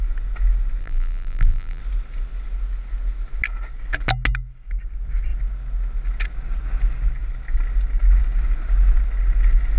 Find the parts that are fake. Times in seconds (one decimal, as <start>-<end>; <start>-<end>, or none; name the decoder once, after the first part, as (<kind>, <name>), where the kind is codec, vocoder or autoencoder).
0.8-1.8 (vocoder, BigVGAN v2)